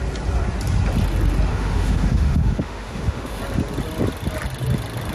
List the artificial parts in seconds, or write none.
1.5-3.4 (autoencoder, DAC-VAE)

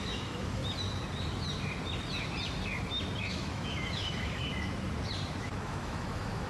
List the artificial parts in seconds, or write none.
0.0-0.6 (autoencoder, DAC-VAE); 3.2-4.5; 5.4-6.5

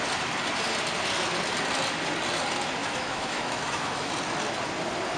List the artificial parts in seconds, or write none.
2.8-4.1 (autoencoder, DAC-VAE)

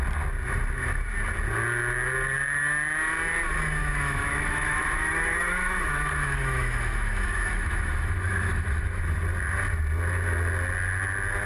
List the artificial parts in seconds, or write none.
3.8-9.0 (autoencoder, DAC-VAE)

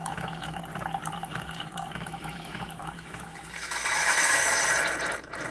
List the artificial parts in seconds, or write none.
0.0-0.6 (autoencoder, DAC-VAE); 1.2-4.5

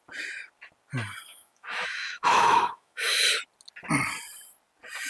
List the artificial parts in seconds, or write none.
1.3-3.2 (autoencoder, DAC-VAE)